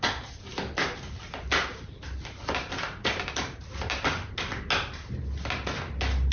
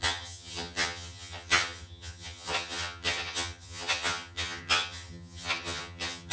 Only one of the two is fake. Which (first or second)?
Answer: second